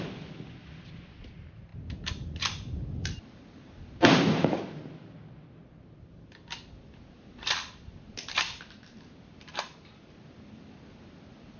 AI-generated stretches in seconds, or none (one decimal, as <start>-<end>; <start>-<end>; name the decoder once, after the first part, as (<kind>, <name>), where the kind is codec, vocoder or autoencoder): none